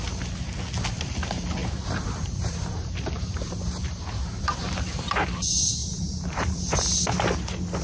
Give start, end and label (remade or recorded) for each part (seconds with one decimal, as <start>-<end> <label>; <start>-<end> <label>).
0.0-1.6 recorded; 1.6-5.1 remade; 5.1-5.8 recorded; 5.8-6.9 remade; 6.9-7.8 recorded